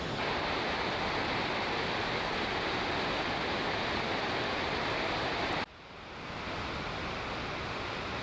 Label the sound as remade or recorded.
recorded